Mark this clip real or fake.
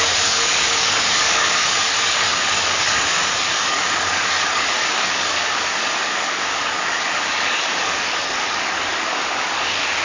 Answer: fake